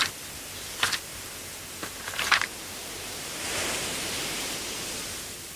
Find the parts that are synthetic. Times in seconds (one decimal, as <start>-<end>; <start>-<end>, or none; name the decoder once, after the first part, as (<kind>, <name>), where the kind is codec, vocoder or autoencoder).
1.1-4.5 (vocoder, BigVGAN v2)